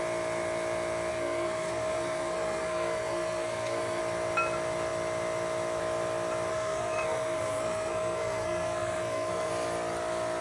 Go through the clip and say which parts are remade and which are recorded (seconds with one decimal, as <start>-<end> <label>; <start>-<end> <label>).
0.0-1.1 recorded; 1.1-4.0 remade; 4.0-6.5 recorded; 6.5-9.5 remade; 9.5-10.4 recorded